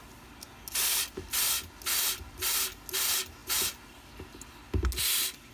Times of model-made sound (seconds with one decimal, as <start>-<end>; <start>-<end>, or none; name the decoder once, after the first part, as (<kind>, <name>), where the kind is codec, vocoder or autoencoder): none